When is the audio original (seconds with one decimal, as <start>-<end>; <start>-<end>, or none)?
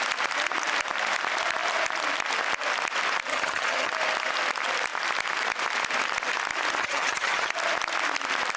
0.0-3.3; 3.9-6.8; 7.5-8.6